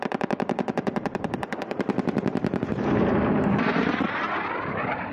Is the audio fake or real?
fake